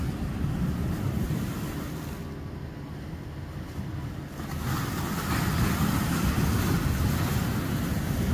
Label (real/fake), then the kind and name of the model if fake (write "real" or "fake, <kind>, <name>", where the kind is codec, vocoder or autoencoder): real